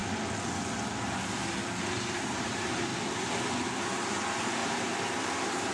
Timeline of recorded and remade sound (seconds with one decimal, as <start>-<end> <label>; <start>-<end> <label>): 0.0-1.8 recorded; 1.8-2.9 remade; 2.9-4.1 recorded; 4.1-5.7 remade